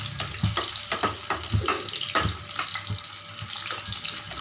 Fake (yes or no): no